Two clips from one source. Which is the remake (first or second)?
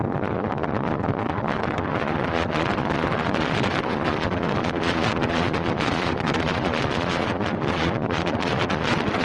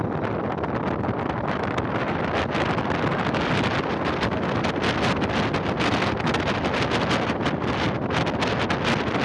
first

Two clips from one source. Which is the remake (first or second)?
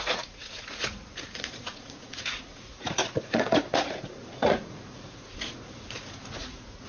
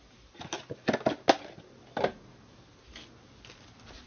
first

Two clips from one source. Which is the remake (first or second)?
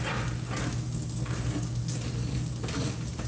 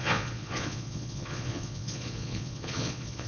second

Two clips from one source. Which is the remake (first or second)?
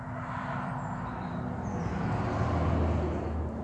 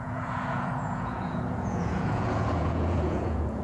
second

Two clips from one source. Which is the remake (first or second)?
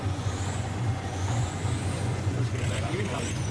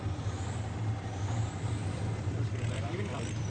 first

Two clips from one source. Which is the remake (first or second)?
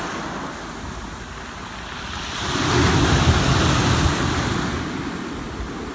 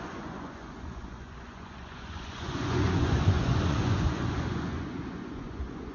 second